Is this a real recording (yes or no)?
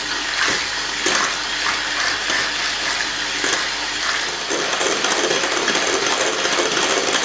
yes